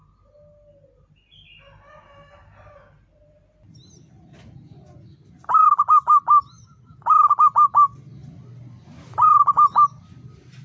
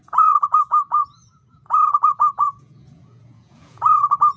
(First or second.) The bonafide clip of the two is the first